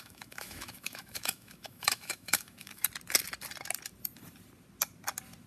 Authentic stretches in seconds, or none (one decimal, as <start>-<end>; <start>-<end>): 2.8-5.5